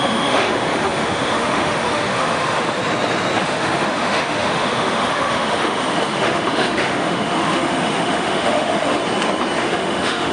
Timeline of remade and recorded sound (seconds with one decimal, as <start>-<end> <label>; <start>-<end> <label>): 0.0-2.8 remade; 2.8-3.4 recorded; 3.4-9.0 remade; 9.0-9.6 recorded; 9.6-10.3 remade